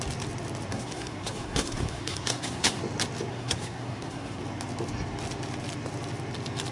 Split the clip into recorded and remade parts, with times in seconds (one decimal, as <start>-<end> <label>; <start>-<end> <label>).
0.0-0.7 recorded; 0.7-2.8 remade; 2.8-3.3 recorded; 3.3-4.4 remade; 4.4-6.7 recorded